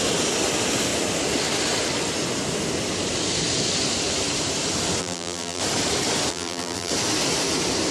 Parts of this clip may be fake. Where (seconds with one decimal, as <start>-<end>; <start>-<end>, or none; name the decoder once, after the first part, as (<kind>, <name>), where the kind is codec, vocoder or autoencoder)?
5.0-5.6 (vocoder, BigVGAN v2); 6.3-6.9